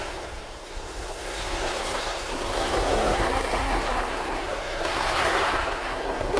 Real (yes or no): no